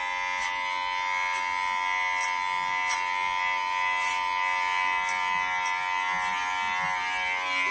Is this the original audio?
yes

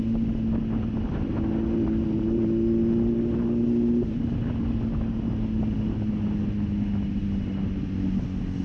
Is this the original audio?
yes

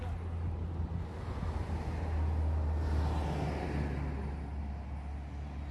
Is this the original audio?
yes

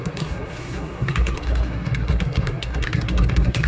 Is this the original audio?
no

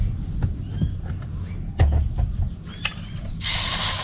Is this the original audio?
no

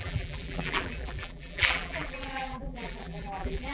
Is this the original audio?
no